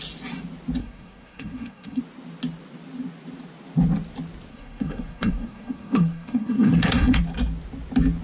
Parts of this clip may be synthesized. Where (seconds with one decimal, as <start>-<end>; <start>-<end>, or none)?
0.8-2.0; 4.5-7.2